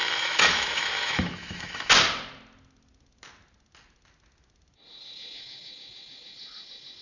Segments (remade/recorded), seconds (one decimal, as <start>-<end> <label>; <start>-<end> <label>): 0.0-1.9 remade; 1.9-7.0 recorded